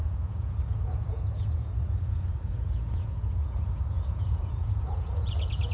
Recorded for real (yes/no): no